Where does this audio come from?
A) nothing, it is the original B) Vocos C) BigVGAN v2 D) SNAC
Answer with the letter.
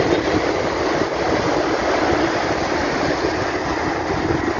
A